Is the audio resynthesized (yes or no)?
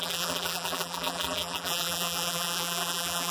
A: yes